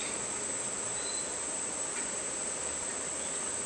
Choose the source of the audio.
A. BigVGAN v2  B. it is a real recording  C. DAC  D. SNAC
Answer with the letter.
A